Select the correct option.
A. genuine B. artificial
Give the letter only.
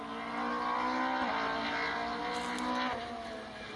A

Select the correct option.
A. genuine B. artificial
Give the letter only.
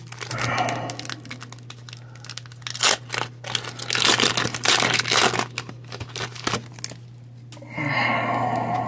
A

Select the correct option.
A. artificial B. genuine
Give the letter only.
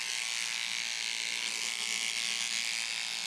B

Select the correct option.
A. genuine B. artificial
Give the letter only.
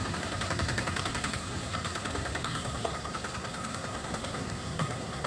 B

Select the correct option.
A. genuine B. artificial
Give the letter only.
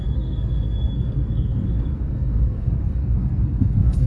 B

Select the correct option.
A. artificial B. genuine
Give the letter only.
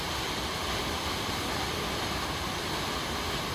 B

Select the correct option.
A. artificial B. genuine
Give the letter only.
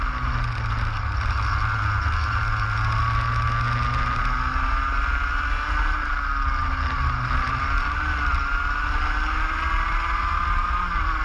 B